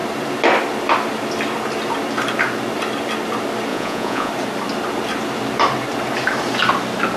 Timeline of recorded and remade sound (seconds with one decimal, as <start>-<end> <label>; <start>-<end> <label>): 0.0-3.7 recorded; 3.7-4.3 remade; 4.3-7.2 recorded